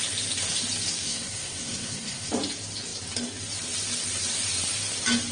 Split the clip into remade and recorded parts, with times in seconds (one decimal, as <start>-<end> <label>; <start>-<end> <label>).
0.0-1.0 recorded; 1.0-2.3 remade; 2.3-5.3 recorded